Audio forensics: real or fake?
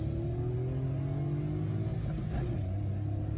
real